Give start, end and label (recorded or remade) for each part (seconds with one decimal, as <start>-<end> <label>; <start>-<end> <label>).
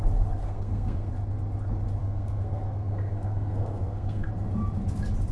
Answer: 0.0-0.4 recorded; 0.4-1.1 remade; 1.1-2.0 recorded; 2.0-4.3 remade; 4.3-5.3 recorded